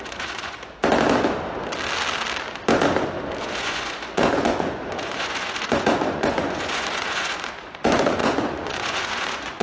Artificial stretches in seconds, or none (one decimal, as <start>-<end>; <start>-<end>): 0.0-0.8; 3.4-9.6